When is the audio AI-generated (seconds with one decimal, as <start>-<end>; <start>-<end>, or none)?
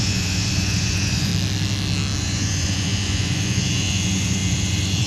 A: 0.0-1.3; 2.2-5.1